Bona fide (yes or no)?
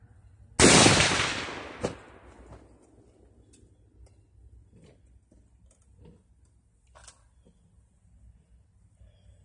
yes